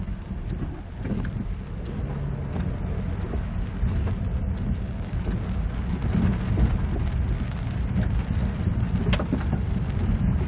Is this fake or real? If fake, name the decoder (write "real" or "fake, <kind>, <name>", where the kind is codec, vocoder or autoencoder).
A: real